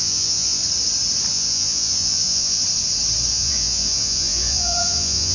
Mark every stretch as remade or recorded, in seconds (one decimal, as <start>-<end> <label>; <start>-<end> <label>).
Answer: 0.0-0.6 remade; 0.6-1.3 recorded; 1.3-2.6 remade; 2.6-3.3 recorded; 3.3-5.3 remade